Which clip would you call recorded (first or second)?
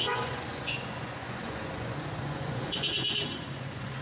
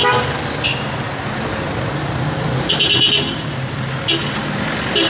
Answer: second